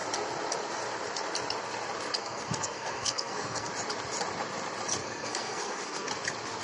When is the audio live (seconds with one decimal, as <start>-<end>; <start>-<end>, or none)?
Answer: 0.0-2.2; 3.7-5.0; 6.1-6.6